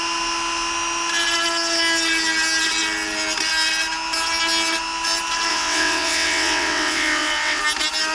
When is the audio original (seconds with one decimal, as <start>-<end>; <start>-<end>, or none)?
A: 0.0-5.5; 7.6-8.1